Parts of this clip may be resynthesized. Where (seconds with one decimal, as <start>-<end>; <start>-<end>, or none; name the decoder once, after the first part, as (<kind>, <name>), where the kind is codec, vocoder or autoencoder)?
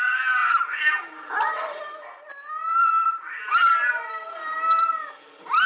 none